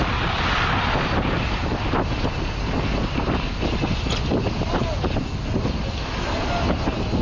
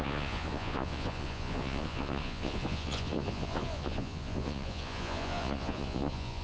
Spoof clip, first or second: second